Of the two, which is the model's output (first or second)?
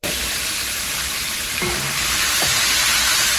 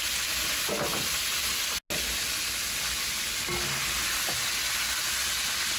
first